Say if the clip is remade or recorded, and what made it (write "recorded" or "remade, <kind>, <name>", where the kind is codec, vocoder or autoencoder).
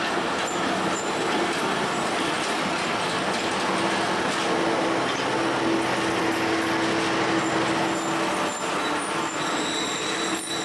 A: recorded